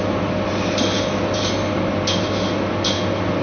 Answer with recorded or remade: recorded